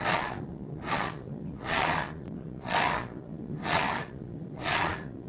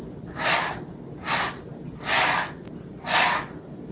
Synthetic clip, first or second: first